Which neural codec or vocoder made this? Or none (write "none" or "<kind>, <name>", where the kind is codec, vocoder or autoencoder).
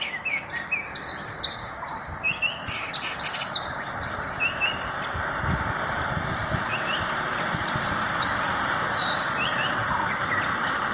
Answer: vocoder, BigVGAN v2